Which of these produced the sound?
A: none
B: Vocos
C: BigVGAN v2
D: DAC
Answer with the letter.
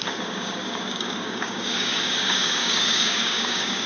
D